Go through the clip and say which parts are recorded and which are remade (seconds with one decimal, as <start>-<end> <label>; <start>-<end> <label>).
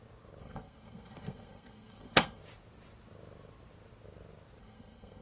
0.0-0.4 recorded; 0.4-2.4 remade; 2.4-4.6 recorded; 4.6-5.2 remade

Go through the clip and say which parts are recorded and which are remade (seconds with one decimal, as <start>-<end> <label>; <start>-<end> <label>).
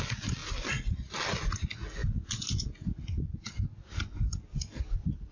0.0-5.3 recorded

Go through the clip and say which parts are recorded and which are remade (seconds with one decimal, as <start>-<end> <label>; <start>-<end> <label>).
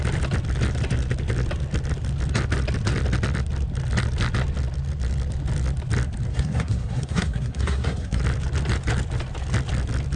0.0-6.3 recorded; 6.3-8.2 remade; 8.2-10.2 recorded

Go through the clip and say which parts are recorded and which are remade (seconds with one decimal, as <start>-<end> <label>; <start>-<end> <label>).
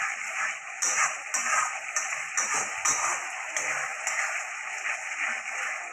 0.0-5.9 recorded